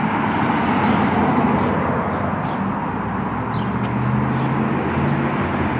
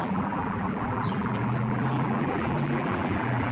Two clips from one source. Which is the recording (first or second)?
first